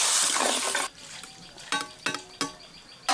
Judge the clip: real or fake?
real